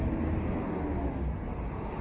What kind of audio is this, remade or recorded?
recorded